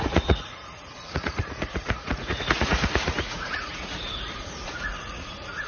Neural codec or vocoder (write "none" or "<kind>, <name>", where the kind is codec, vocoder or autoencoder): vocoder, Vocos